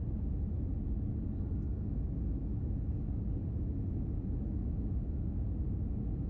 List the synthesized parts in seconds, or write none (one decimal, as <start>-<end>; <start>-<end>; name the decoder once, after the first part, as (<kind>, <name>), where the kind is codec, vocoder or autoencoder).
none